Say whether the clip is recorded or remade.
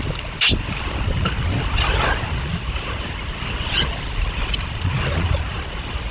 recorded